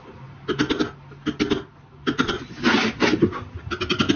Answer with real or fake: real